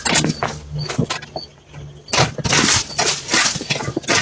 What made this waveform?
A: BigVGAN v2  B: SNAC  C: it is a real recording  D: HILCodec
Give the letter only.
C